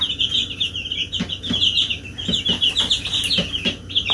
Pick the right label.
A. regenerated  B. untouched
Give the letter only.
B